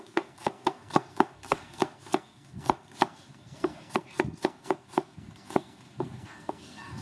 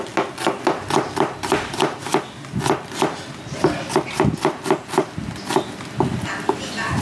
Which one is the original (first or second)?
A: second